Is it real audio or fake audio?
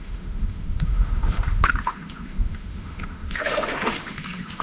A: fake